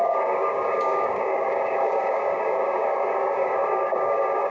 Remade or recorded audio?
remade